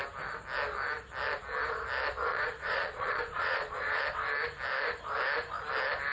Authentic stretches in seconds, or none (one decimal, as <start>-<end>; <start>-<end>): 0.0-2.3; 4.0-6.1